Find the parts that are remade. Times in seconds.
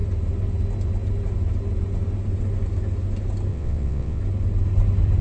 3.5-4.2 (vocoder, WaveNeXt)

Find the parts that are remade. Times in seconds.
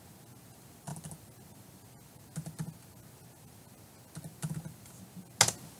none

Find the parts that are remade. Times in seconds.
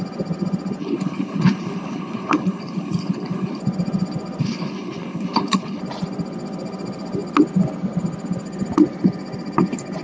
0.8-3.6 (codec, HILCodec); 4.4-5.8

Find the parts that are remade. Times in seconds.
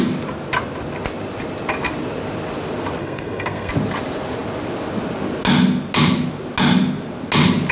3.0-3.7 (codec, SNAC)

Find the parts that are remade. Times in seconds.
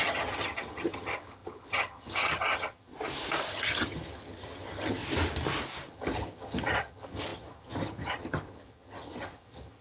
0.0-2.9 (vocoder, HiFi-GAN); 3.5-5.0; 5.9-9.8